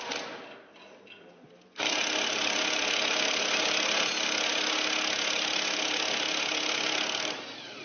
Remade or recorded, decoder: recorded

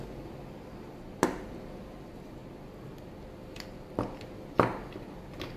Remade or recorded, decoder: recorded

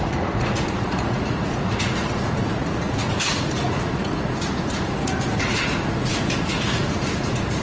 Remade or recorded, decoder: remade, vocoder, Vocos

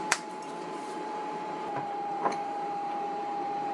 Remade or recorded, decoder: remade, vocoder, BigVGAN v2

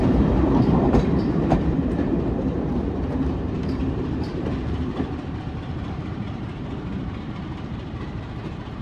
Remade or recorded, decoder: remade, vocoder, BigVGAN v2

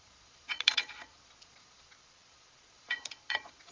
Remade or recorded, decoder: remade, vocoder, Vocos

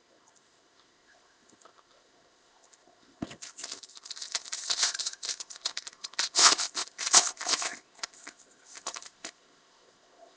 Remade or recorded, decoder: remade, codec, ZipCodec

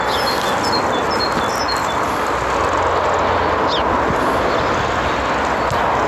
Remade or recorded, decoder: recorded